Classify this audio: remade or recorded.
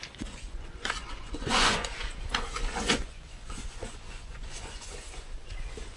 remade